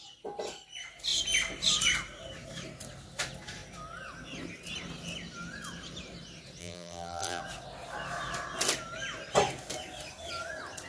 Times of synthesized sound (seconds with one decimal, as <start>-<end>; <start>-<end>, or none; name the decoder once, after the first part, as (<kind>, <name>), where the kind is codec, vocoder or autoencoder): 6.6-7.4 (vocoder, BigVGAN v2)